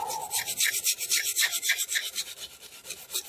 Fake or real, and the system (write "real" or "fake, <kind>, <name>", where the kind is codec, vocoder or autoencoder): real